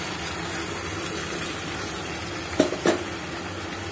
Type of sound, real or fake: real